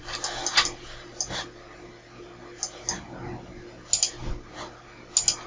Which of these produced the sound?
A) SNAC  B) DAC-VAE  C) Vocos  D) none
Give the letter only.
D